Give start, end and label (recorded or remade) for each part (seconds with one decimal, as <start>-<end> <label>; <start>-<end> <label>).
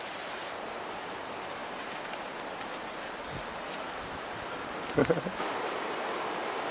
0.0-1.6 remade; 1.6-5.3 recorded; 5.3-6.7 remade